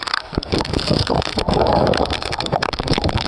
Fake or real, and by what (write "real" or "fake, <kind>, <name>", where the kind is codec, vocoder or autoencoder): fake, codec, SNAC